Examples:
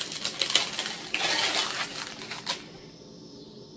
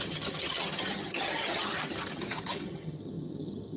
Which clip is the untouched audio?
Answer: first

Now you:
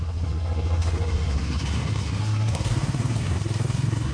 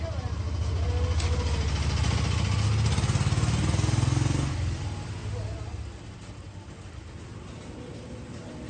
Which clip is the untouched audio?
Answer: second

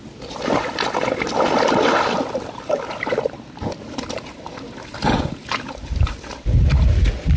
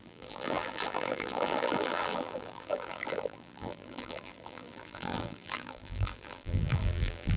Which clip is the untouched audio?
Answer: first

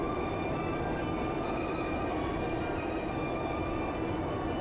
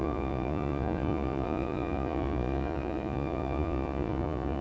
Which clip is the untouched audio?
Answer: first